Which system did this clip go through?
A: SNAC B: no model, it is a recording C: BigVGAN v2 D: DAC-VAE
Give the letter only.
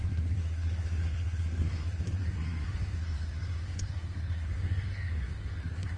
A